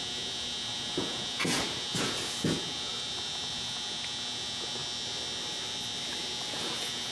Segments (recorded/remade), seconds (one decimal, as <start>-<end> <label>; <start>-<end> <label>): 0.0-4.8 remade; 4.8-6.5 recorded; 6.5-7.1 remade